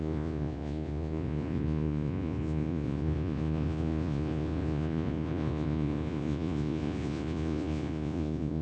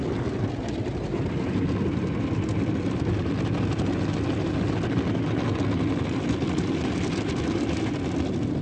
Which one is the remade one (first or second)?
first